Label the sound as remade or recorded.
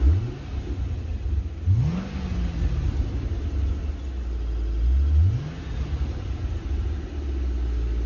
recorded